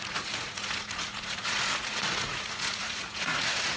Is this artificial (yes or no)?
yes